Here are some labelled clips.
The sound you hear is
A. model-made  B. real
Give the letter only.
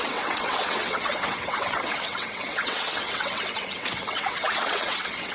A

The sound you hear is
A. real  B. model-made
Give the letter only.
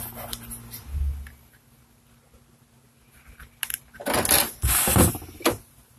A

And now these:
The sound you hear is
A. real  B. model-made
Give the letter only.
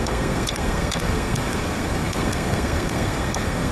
B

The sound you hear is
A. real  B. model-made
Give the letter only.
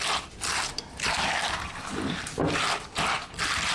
B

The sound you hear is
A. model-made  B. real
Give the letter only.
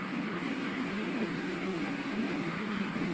A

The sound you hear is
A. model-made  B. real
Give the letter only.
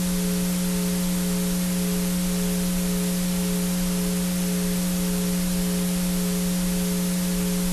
B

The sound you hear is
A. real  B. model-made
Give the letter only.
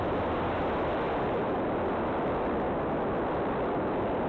A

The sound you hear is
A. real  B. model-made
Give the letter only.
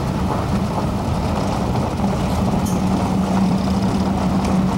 A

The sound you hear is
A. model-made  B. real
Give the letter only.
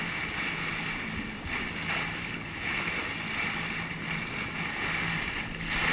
B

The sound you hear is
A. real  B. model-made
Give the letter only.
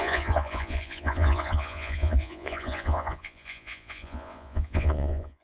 B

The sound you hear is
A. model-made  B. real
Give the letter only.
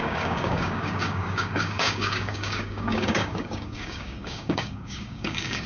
A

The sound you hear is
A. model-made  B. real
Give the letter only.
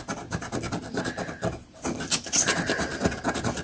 B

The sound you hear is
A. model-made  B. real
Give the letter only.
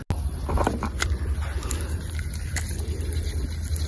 B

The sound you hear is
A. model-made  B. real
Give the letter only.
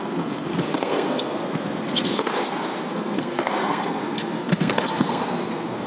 A